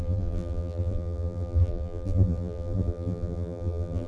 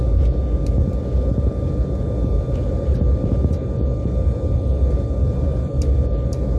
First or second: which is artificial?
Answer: first